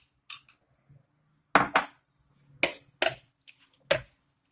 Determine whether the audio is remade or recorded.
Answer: recorded